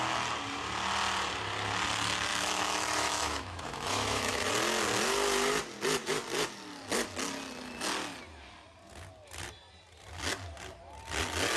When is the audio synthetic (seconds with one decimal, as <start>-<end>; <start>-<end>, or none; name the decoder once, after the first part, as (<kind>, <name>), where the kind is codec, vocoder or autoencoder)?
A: 2.3-4.5 (autoencoder, DAC-VAE)